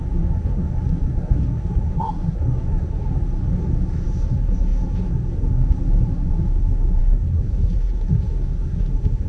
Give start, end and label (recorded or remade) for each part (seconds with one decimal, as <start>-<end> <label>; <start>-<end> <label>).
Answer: 0.0-9.3 remade